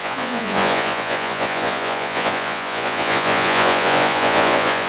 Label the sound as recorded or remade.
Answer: remade